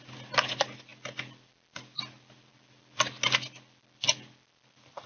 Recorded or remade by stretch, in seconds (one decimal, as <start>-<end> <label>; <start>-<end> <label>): 0.0-5.1 recorded